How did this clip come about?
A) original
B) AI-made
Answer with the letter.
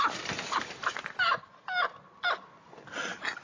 A